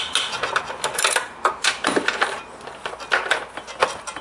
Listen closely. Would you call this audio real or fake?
real